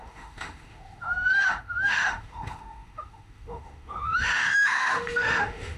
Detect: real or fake fake